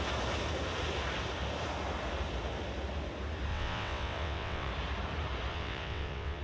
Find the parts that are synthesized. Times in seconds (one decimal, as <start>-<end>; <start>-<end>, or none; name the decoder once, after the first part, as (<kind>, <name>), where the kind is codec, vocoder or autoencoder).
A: 3.5-4.7 (vocoder, WaveNeXt); 5.5-6.4